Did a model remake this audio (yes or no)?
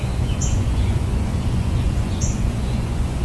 yes